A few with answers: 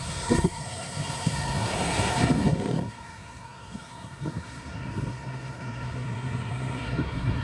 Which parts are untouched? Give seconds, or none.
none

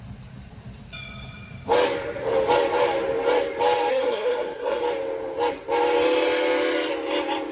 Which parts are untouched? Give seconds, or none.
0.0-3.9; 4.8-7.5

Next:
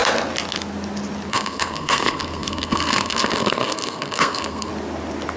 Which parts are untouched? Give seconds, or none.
0.0-1.3; 4.7-5.4

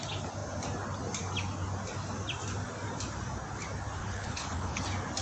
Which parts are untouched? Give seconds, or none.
0.0-4.0; 4.8-5.2